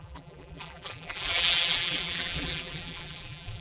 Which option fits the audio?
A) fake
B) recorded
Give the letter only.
A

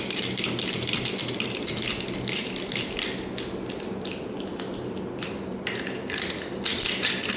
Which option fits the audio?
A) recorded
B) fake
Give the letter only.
A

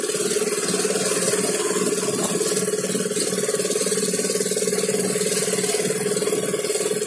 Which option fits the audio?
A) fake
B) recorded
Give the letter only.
B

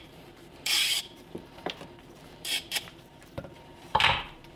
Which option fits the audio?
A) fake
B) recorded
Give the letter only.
A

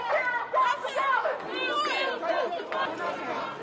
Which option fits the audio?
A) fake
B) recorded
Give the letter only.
A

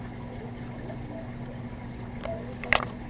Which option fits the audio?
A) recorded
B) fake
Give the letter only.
A